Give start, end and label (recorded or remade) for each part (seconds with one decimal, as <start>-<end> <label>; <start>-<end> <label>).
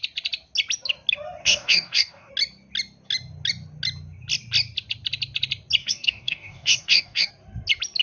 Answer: 0.0-1.4 recorded; 1.4-2.3 remade; 2.3-5.8 recorded; 5.8-7.3 remade; 7.3-8.0 recorded